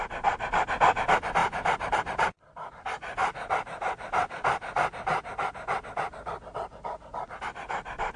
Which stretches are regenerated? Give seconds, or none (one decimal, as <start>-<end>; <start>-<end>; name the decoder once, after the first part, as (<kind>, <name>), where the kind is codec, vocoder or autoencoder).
1.4-2.7 (vocoder, BigVGAN v2); 5.1-6.4